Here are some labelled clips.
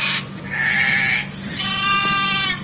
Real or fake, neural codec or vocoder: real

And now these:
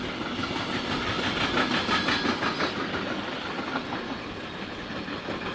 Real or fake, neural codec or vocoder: real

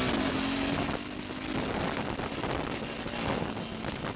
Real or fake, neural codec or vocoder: real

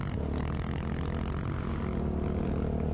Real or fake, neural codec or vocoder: real